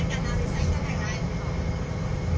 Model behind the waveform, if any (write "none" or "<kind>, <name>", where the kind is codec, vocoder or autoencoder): none